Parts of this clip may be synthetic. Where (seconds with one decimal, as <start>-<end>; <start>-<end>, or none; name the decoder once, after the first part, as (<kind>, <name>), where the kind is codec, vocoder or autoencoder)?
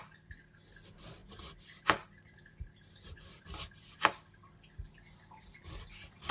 none